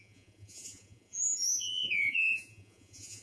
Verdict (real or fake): fake